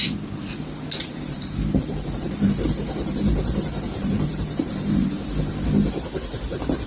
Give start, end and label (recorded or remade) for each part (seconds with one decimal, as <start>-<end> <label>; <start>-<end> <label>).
0.0-1.0 recorded; 1.0-5.1 remade; 5.1-6.9 recorded